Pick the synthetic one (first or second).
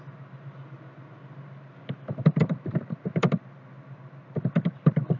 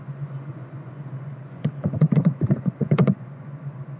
second